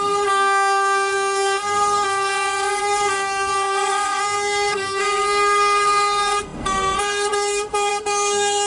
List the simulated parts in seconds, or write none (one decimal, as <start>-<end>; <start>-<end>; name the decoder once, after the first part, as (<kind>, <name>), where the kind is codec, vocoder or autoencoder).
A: 0.0-8.7 (codec, SNAC)